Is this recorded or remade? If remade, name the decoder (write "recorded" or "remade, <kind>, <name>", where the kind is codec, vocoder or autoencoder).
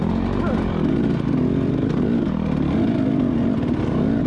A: recorded